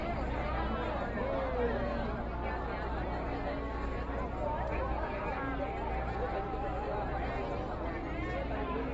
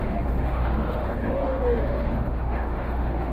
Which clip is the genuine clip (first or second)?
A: first